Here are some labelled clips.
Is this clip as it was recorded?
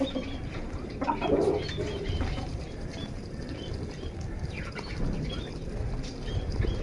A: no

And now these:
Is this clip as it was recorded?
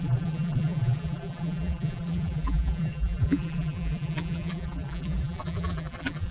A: no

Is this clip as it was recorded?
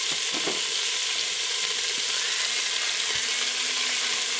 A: yes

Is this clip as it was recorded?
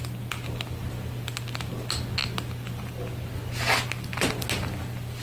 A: yes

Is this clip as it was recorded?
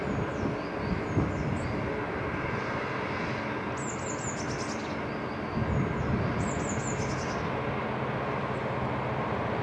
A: yes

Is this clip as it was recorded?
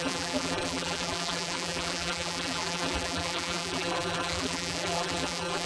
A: no